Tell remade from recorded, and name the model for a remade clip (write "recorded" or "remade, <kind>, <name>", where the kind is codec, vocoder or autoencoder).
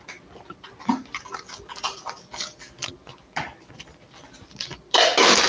recorded